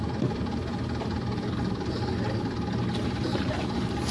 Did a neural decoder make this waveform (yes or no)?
no